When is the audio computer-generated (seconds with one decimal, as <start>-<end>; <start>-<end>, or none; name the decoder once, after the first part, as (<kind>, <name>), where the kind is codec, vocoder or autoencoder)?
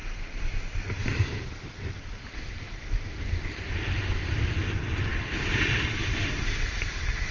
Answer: 1.1-2.9 (vocoder, BigVGAN v2); 5.1-6.4